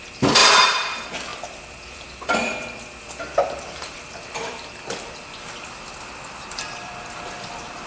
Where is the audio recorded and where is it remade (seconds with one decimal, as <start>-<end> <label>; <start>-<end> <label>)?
0.0-7.9 remade